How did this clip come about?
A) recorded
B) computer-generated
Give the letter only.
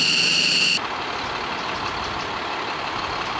A